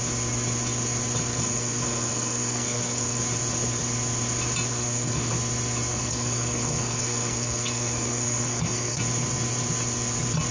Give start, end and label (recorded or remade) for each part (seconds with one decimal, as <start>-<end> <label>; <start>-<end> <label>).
0.0-1.3 recorded; 1.3-3.2 remade; 3.2-4.7 recorded; 4.7-5.3 remade; 5.3-5.9 recorded; 5.9-9.0 remade; 9.0-10.5 recorded